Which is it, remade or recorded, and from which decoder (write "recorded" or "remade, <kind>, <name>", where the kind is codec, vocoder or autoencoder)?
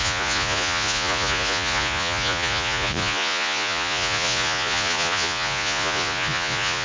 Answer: remade, vocoder, Vocos